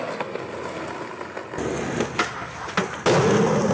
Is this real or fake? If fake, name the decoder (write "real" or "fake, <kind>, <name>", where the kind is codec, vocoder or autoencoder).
real